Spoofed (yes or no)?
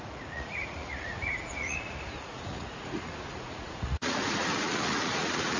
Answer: yes